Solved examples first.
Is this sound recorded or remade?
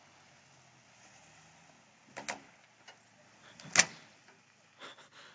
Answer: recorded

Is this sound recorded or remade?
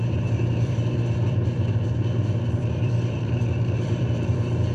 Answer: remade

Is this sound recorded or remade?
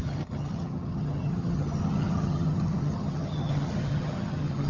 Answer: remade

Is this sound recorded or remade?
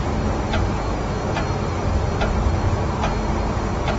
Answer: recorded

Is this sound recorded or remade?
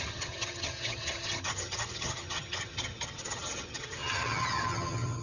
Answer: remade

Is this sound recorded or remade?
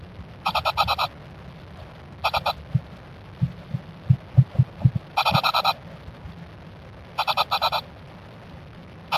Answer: recorded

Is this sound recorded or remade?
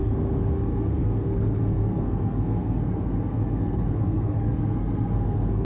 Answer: remade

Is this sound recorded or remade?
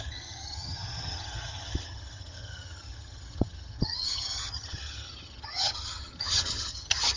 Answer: remade